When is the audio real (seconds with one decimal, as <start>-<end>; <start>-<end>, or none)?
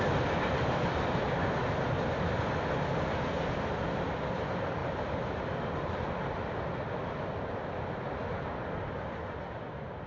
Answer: 0.0-10.1